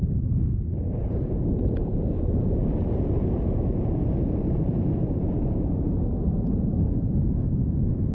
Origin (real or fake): fake